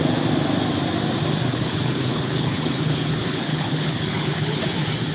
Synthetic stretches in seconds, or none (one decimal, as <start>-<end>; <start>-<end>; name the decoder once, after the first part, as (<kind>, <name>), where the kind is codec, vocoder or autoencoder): 1.5-4.6 (codec, HILCodec)

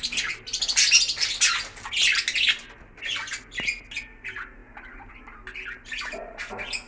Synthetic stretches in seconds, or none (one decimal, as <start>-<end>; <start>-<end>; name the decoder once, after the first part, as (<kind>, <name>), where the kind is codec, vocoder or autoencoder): none